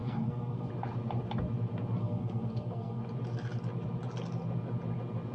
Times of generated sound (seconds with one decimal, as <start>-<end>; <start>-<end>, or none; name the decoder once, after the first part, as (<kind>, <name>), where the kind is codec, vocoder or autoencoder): 0.0-0.7 (codec, SNAC); 2.0-3.0